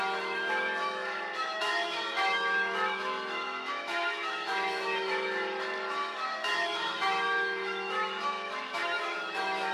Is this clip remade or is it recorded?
remade